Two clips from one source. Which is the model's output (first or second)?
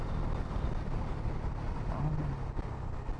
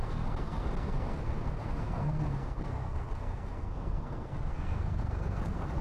second